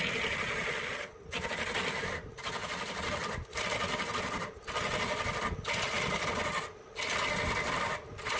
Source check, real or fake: real